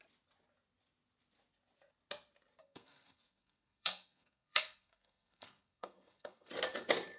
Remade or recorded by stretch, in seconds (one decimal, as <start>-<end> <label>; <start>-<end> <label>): 0.0-2.6 recorded; 2.6-6.5 remade; 6.5-7.2 recorded